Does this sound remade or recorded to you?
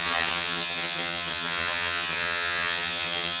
remade